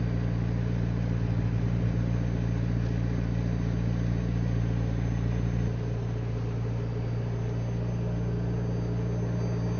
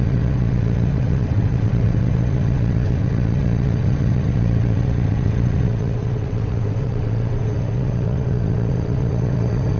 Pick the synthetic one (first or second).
second